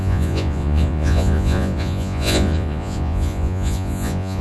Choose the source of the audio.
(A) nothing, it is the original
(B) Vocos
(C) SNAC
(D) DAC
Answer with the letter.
B